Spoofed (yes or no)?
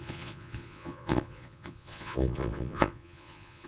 yes